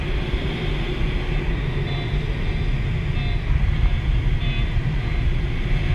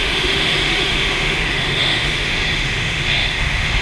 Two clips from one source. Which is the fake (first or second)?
second